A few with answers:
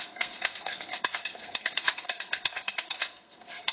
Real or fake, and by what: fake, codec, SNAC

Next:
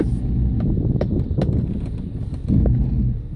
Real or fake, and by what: real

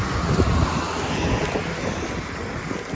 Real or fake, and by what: real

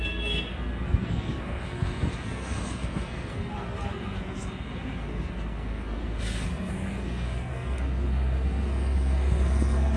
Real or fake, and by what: fake, codec, SNAC